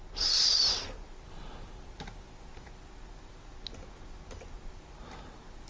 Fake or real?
real